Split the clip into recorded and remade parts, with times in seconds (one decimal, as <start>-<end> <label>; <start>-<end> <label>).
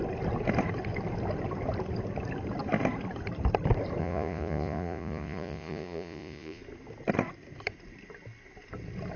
0.0-4.0 recorded; 4.0-6.6 remade; 6.6-9.2 recorded